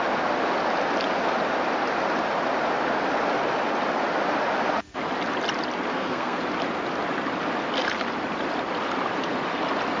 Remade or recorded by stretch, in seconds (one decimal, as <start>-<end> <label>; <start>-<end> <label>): 0.0-5.9 recorded; 5.9-6.4 remade; 6.4-10.0 recorded